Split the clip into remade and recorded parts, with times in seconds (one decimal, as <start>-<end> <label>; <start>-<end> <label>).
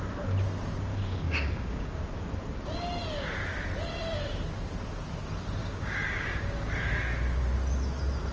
0.0-0.9 recorded; 0.9-2.0 remade; 2.0-5.6 recorded; 5.6-6.7 remade; 6.7-8.3 recorded